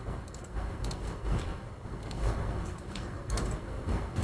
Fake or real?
fake